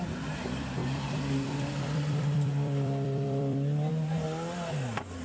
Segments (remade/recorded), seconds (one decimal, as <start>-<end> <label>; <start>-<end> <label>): 0.0-0.8 recorded; 0.8-3.9 remade; 3.9-5.2 recorded